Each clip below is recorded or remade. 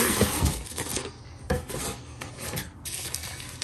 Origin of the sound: remade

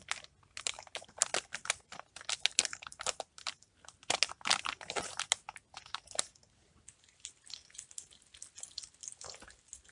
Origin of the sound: recorded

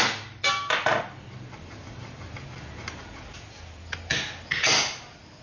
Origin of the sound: recorded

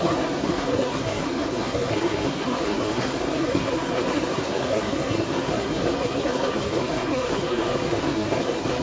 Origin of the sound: remade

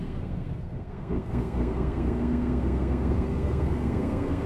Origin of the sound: remade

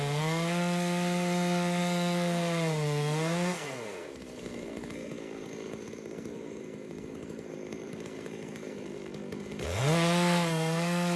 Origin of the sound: remade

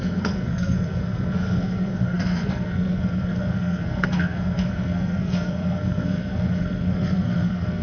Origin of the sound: remade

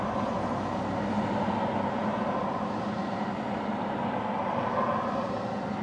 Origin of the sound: recorded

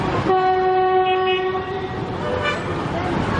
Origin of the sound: recorded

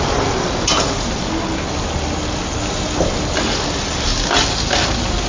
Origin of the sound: recorded